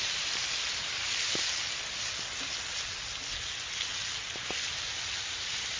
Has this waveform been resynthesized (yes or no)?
no